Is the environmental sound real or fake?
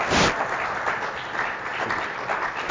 real